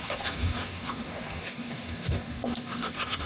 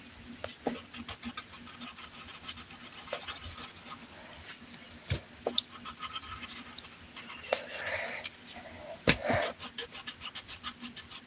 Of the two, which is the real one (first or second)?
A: second